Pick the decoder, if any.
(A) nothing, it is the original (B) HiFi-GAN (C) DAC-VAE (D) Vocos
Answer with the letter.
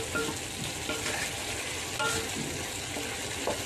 A